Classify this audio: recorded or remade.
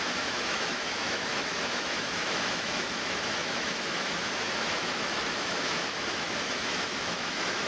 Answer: remade